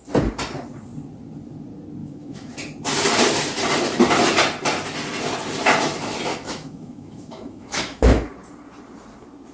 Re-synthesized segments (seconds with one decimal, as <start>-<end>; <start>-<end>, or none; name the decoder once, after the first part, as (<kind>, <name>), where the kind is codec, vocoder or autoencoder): 2.0-2.5 (autoencoder, DAC-VAE); 6.3-8.3